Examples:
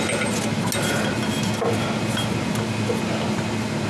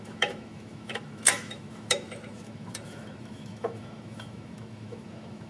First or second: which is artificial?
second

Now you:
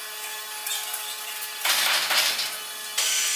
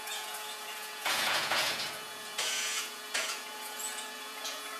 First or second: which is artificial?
second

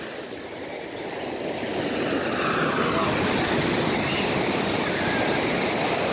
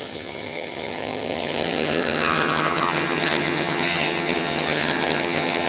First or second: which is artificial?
second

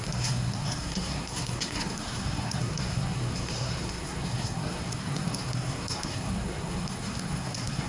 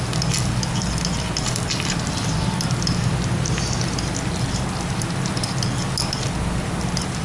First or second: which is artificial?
first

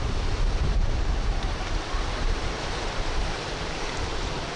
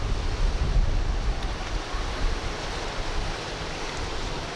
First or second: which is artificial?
first